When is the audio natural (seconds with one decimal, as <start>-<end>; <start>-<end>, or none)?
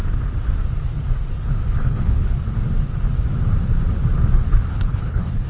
0.0-1.8; 2.3-4.7